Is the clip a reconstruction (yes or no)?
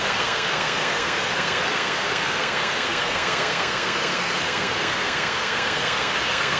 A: yes